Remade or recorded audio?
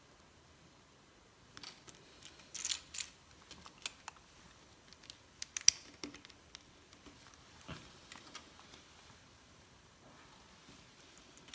recorded